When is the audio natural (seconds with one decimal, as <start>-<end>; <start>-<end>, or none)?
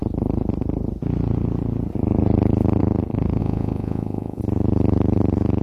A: 0.0-3.4; 4.4-5.6